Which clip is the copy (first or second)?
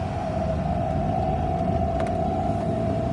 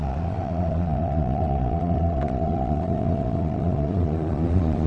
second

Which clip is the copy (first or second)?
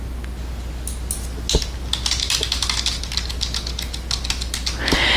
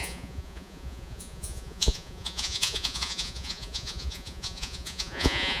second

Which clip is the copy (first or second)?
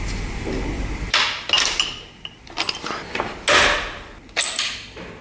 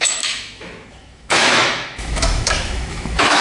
second